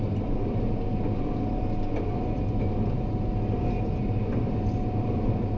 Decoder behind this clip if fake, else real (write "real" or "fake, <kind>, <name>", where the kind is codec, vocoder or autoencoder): real